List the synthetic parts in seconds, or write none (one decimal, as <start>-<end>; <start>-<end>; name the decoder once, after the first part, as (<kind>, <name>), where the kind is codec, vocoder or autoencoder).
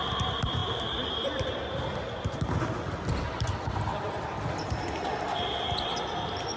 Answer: 0.6-1.5 (vocoder, BigVGAN v2)